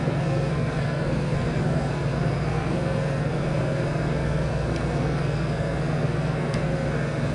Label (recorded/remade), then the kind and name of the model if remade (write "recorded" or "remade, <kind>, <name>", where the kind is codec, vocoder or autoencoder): remade, codec, SNAC